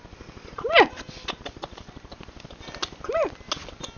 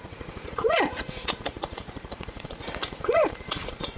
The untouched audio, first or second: first